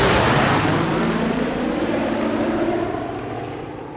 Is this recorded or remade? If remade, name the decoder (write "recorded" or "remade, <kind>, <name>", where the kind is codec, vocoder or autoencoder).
recorded